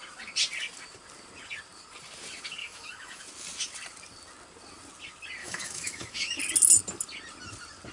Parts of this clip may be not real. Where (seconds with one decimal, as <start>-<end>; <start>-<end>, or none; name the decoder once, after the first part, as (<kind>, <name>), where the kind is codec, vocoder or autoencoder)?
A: 2.6-3.2 (autoencoder, DAC-VAE); 5.4-6.4